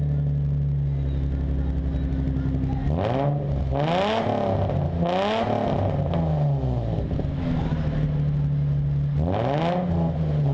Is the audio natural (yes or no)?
yes